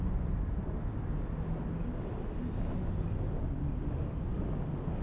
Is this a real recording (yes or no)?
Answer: yes